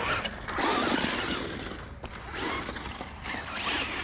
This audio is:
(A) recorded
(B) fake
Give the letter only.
A